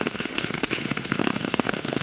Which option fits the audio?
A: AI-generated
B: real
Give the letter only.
A